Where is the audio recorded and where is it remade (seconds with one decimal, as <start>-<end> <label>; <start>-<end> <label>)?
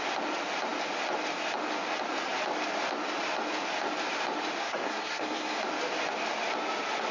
0.0-4.6 recorded; 4.6-5.6 remade; 5.6-7.1 recorded